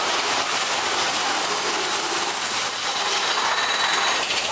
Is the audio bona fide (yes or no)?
yes